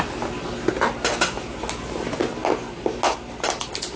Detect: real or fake real